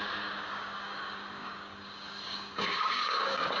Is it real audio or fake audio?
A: fake